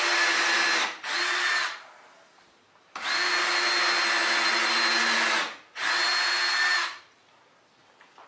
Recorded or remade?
recorded